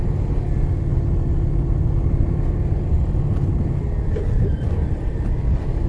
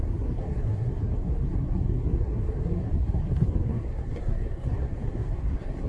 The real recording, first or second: first